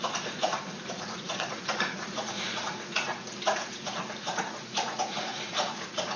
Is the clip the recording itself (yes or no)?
no